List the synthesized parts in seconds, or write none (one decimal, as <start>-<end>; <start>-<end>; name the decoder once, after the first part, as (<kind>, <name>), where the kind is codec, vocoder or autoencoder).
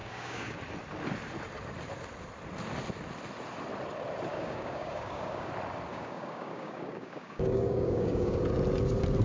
0.0-0.6 (codec, DAC); 4.3-5.5; 5.9-8.4